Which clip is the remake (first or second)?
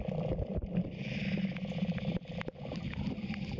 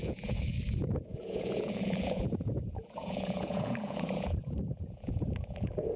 second